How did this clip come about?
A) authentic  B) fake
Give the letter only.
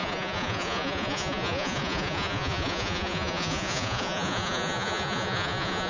B